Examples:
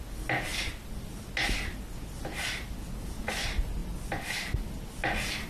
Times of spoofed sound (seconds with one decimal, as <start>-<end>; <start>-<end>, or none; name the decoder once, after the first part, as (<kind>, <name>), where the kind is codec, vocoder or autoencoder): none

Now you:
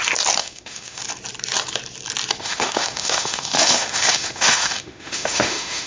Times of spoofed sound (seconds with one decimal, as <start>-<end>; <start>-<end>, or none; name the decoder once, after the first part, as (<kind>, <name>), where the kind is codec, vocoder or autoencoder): 0.4-1.0 (autoencoder, DAC-VAE); 2.4-5.9

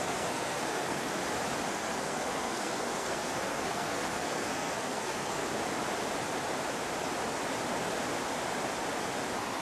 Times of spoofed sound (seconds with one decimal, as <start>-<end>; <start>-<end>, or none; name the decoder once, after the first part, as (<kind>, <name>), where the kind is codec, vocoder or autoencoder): 0.0-1.2 (codec, SNAC); 1.7-5.4

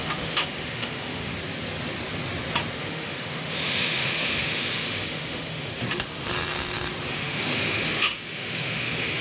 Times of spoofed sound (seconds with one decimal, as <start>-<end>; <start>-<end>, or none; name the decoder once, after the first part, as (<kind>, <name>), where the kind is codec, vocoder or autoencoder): 0.0-1.3 (autoencoder, DAC-VAE); 2.7-5.7; 7.1-9.2

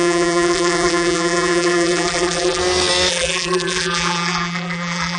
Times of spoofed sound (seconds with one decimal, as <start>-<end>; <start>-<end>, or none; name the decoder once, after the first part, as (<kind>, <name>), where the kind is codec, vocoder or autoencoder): 0.0-2.6 (vocoder, BigVGAN v2); 3.1-5.2

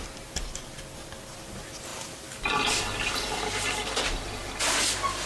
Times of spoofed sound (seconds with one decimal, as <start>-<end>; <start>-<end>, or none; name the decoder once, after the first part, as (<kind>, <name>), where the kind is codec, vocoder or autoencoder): none

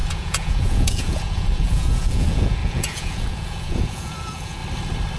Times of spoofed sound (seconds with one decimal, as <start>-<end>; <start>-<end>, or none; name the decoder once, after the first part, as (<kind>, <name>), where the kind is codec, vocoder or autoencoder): 0.0-4.6 (vocoder, Vocos)

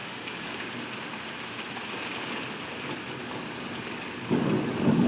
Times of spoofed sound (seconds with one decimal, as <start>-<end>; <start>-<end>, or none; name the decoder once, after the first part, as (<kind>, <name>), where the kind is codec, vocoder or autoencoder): 0.0-0.5 (codec, DAC); 3.2-5.1